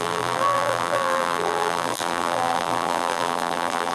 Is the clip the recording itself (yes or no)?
no